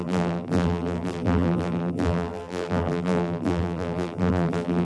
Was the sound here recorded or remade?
remade